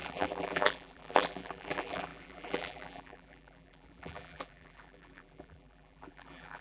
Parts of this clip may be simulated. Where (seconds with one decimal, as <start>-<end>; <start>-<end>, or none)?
0.0-6.6